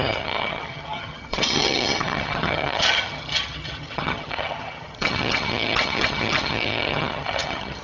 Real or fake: fake